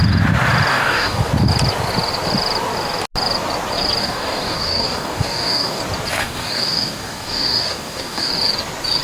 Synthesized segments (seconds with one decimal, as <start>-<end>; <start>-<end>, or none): 0.7-1.3; 4.0-5.8; 6.2-8.3